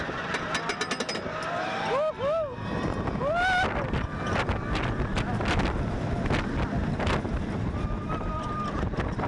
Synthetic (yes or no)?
no